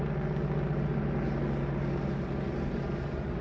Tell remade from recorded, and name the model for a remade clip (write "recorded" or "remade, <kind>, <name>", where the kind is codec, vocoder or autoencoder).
recorded